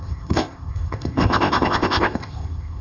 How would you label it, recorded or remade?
remade